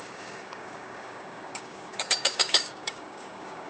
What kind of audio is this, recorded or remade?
remade